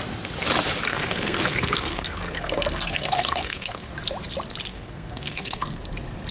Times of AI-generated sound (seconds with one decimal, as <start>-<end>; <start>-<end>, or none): 0.9-3.9; 4.7-5.8